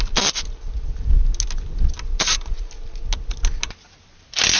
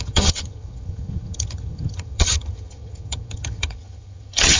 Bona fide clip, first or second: first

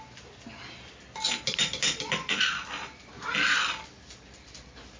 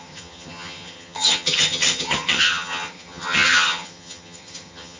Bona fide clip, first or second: first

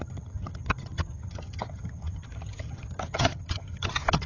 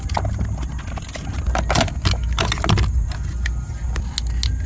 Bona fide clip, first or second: second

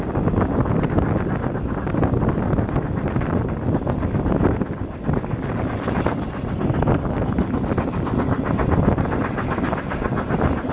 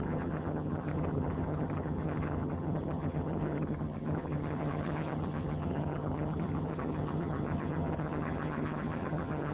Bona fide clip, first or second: first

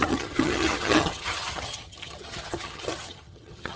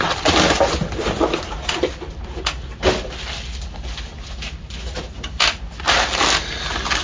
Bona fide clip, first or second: second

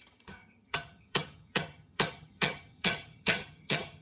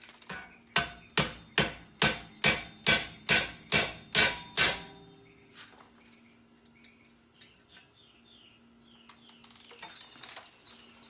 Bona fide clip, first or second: second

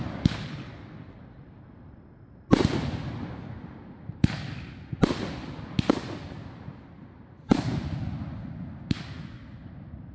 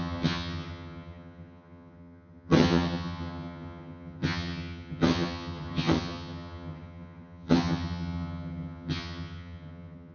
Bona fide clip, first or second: first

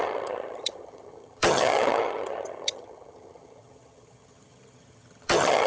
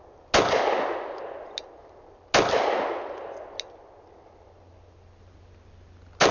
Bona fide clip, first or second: second